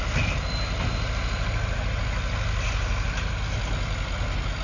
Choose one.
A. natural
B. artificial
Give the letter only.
A